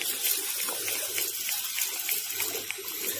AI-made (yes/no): no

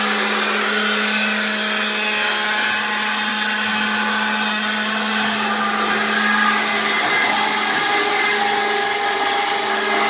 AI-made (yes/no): no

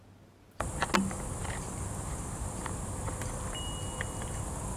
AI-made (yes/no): no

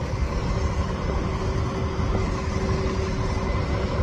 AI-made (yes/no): no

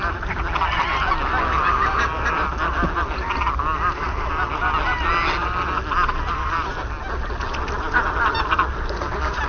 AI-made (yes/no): no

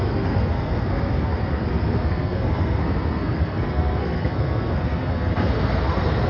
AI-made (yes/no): yes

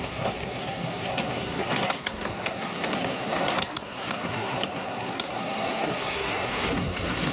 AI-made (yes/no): yes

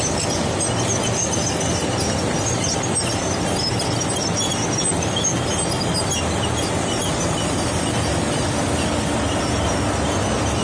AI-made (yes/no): no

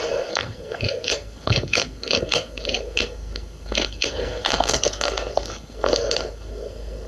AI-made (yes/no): yes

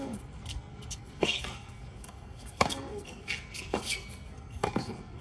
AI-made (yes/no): yes